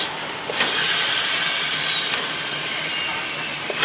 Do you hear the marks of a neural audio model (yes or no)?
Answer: yes